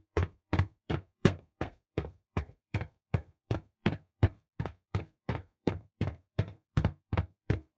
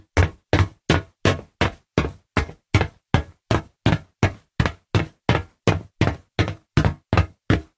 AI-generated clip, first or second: first